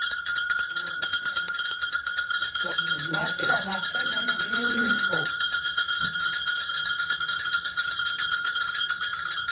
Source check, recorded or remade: remade